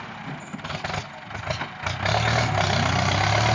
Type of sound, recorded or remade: recorded